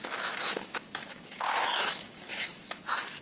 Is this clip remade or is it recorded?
remade